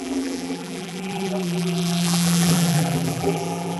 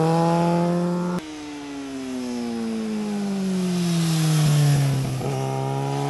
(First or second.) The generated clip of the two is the first